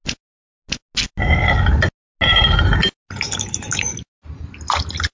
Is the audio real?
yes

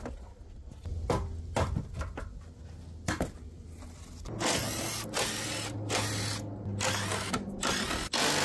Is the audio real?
yes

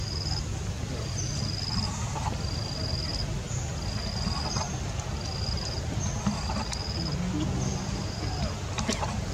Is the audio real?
yes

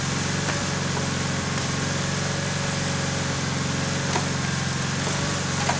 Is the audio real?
yes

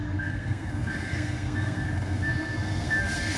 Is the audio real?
no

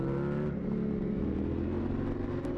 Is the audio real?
yes